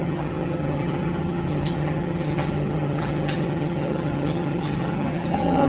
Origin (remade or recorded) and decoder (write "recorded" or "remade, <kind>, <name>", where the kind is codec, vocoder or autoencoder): remade, vocoder, HiFi-GAN